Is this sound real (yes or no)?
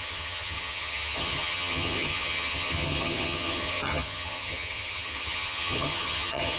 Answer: no